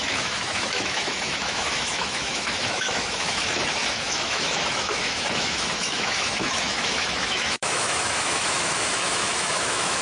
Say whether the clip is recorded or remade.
remade